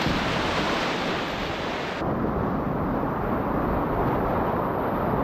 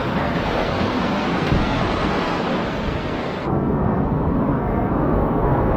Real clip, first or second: first